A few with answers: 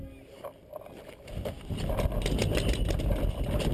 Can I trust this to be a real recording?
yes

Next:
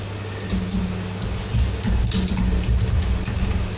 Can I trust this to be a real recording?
yes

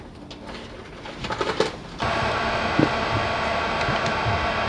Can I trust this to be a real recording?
yes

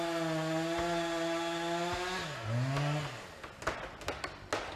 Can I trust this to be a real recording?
yes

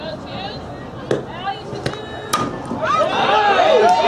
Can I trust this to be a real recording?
yes